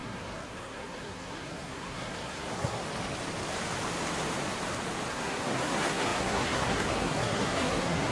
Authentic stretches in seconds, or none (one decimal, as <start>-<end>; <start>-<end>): 2.8-5.1